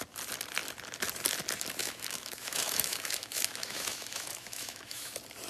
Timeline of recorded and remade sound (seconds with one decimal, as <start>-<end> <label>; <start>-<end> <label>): 0.0-1.8 recorded; 1.8-5.1 remade; 5.1-5.5 recorded